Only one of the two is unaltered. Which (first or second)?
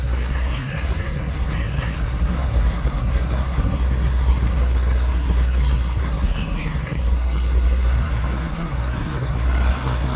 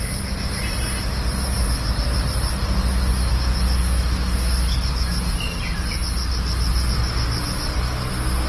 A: second